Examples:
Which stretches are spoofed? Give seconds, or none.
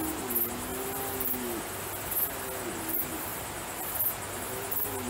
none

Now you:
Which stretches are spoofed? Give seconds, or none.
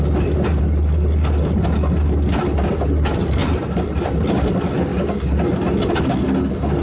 3.4-4.5; 4.9-5.5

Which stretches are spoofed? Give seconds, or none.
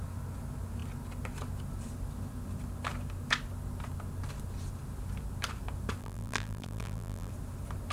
6.0-7.3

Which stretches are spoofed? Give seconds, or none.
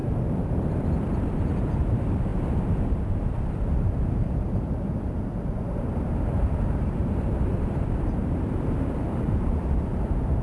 0.0-10.4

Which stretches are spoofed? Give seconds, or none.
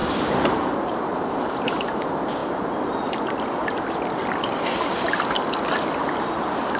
0.0-1.6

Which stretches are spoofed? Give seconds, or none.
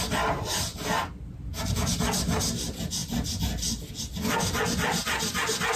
none